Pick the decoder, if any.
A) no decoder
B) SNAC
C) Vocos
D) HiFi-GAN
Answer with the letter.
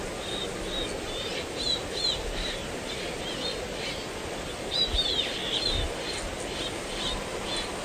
A